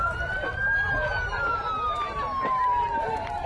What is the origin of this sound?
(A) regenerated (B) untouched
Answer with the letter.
B